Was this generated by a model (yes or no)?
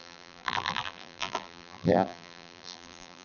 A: yes